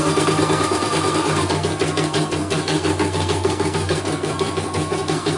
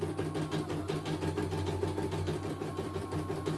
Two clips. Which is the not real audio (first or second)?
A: first